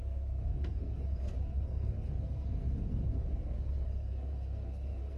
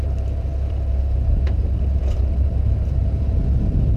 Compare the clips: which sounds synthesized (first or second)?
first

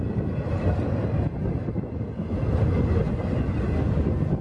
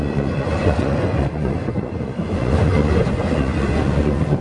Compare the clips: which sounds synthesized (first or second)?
second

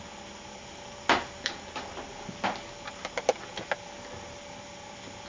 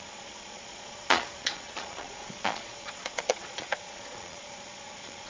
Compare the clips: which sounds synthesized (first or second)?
second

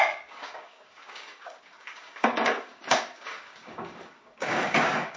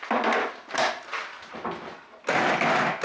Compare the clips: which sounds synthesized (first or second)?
first